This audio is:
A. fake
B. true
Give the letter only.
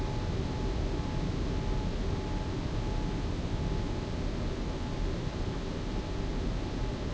B